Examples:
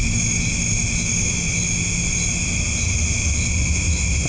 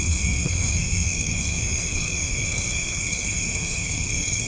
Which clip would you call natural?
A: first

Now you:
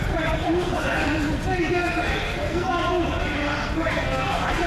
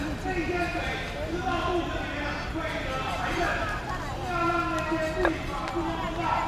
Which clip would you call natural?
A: second